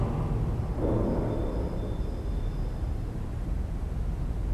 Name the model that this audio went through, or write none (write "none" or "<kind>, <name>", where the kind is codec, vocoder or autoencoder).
none